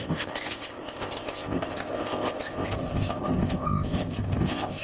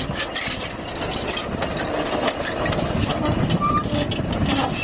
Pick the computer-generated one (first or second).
first